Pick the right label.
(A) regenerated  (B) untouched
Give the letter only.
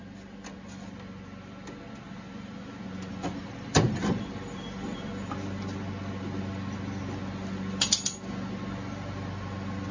B